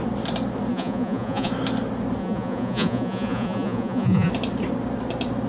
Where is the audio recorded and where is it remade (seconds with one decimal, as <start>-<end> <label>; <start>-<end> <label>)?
0.0-0.7 recorded; 0.7-1.5 remade; 1.5-2.2 recorded; 2.2-4.3 remade; 4.3-5.5 recorded